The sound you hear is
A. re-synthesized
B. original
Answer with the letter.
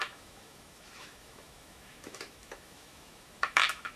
A